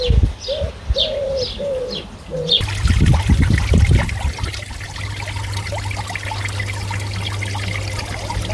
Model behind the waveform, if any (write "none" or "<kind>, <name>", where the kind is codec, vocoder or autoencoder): none